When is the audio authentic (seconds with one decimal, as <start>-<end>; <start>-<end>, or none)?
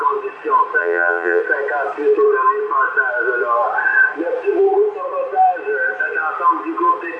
0.0-0.8; 1.4-7.2